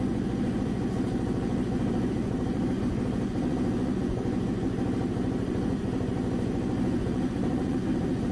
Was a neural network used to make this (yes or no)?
yes